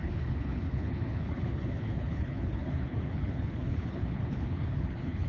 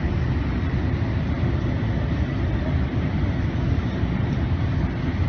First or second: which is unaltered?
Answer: second